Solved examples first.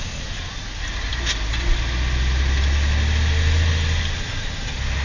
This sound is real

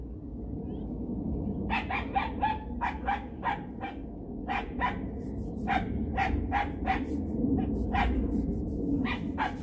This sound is real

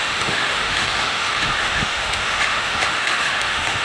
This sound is fake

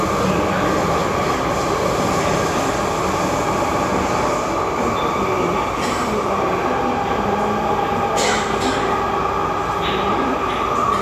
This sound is real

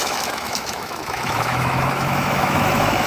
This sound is fake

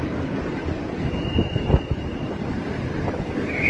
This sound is real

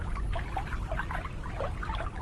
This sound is real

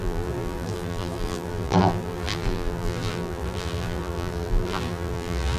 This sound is fake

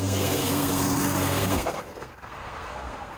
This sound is fake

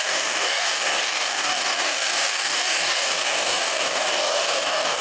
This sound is fake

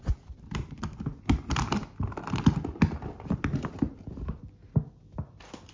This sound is real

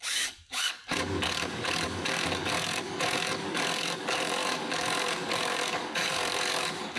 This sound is fake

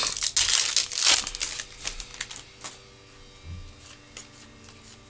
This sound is real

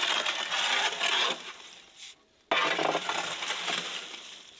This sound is real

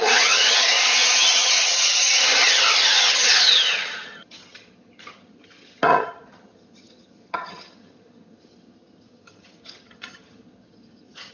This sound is fake